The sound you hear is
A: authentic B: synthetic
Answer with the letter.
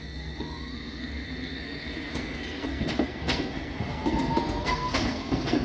B